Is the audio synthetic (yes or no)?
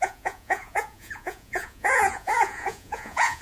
yes